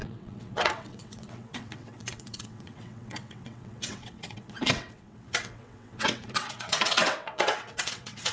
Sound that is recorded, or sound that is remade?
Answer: remade